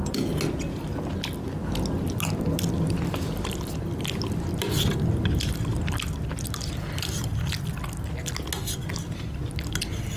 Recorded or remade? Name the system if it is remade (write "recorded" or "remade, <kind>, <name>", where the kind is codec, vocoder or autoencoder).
recorded